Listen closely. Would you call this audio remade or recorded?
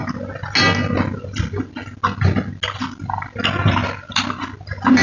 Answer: recorded